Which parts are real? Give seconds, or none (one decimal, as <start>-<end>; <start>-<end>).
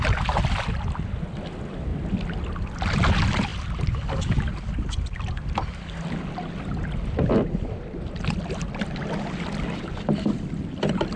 0.0-11.2